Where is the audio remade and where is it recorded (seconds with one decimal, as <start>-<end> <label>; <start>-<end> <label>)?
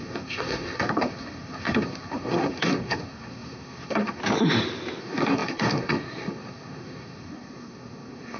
0.0-4.2 remade; 4.2-5.0 recorded; 5.0-8.4 remade